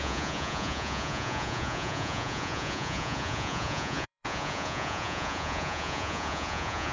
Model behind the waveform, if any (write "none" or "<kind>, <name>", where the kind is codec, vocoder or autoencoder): vocoder, Vocos